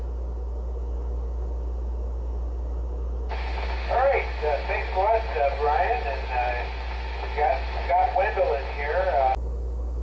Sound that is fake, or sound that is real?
real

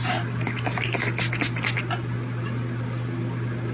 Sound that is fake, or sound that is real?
real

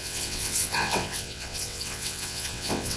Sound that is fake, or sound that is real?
fake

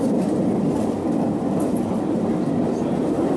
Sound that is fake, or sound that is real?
real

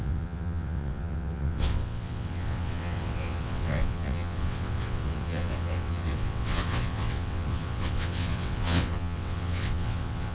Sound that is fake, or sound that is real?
fake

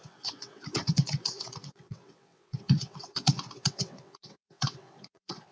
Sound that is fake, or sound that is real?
fake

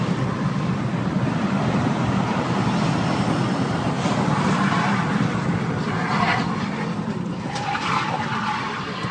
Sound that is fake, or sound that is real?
real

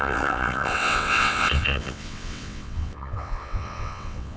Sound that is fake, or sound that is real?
fake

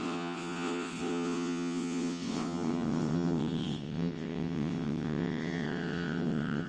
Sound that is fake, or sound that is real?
fake